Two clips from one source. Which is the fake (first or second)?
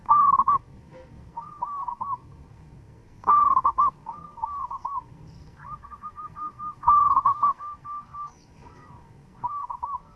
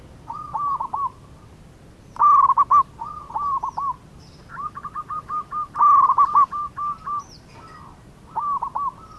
first